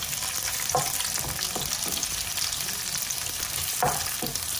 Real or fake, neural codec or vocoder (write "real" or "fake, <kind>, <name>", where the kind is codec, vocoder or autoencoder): real